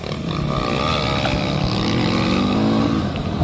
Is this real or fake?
real